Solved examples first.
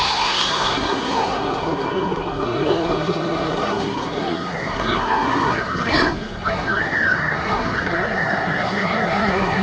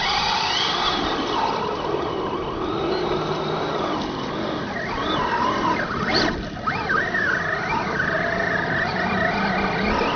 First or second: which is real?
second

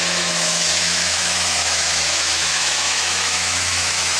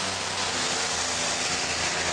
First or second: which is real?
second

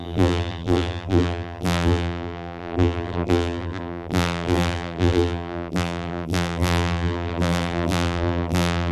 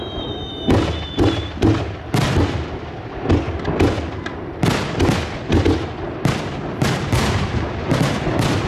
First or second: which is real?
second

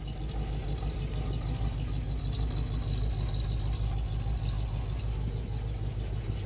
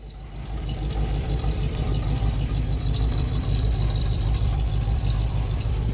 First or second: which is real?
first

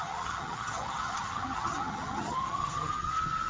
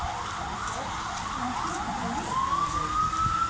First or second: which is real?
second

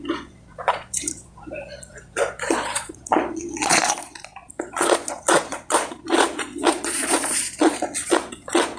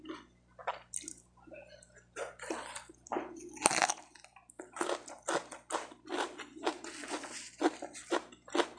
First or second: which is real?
second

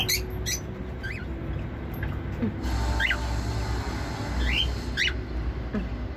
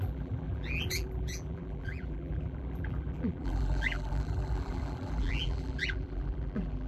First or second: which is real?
first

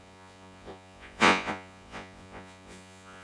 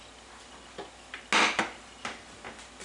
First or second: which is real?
second